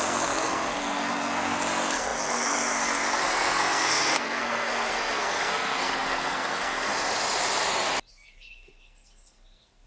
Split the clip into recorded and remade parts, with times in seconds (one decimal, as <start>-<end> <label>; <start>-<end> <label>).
0.0-6.9 remade; 6.9-8.1 recorded; 8.1-9.9 remade